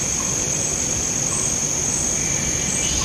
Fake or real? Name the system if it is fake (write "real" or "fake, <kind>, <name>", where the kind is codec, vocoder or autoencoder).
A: real